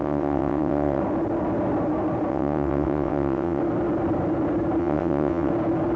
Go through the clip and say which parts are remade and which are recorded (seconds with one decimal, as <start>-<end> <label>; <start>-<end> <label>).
0.0-1.0 remade; 1.0-2.3 recorded; 2.3-3.6 remade; 3.6-4.8 recorded; 4.8-5.5 remade; 5.5-6.0 recorded